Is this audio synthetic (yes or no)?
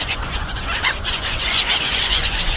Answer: yes